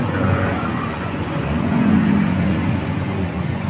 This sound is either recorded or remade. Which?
remade